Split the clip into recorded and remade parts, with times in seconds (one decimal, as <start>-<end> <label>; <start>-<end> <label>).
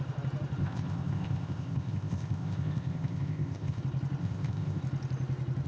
0.0-0.6 recorded; 0.6-3.8 remade; 3.8-4.2 recorded; 4.2-4.8 remade; 4.8-5.7 recorded